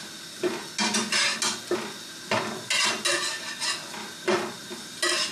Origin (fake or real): real